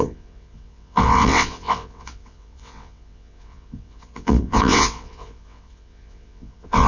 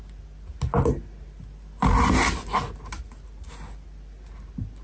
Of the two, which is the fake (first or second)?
first